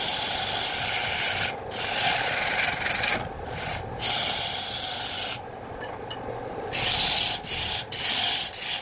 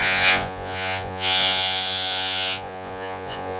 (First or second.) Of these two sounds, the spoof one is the second